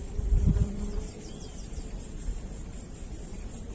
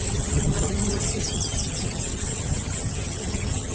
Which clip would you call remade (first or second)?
second